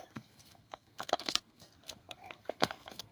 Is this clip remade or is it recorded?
remade